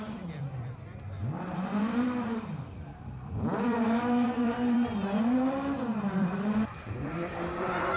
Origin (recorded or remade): remade